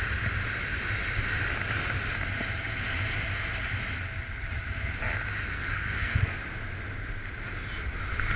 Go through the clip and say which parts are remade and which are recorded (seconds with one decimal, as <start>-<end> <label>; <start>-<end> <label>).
0.0-5.4 recorded; 5.4-6.4 remade; 6.4-8.4 recorded